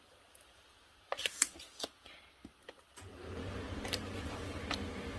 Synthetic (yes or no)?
no